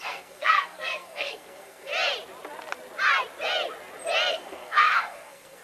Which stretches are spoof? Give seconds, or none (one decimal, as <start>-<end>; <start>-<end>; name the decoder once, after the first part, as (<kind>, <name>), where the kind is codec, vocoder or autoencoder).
0.0-1.9 (codec, SNAC); 4.3-5.6